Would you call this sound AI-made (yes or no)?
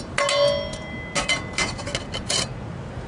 no